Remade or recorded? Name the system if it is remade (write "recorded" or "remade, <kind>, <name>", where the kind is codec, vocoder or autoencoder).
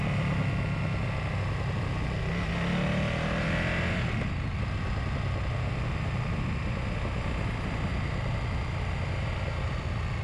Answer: recorded